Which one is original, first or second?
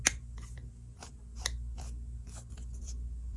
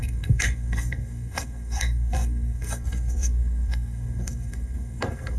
first